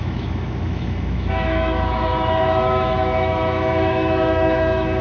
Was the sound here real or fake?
fake